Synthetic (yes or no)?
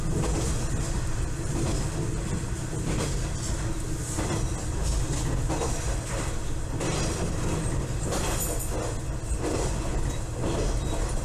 no